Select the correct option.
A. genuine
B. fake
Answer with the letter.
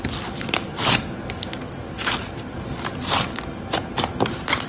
A